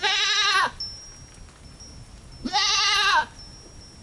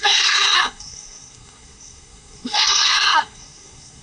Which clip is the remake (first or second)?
second